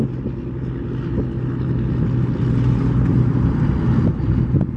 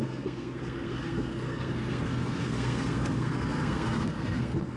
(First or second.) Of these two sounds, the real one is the first